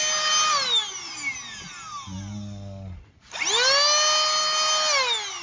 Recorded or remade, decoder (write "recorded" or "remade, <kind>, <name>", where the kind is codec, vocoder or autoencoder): recorded